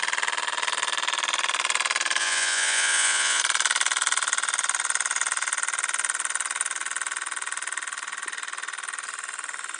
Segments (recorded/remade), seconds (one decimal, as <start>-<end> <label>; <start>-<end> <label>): 0.0-2.2 recorded; 2.2-3.4 remade; 3.4-9.8 recorded